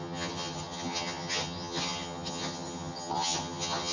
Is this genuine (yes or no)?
no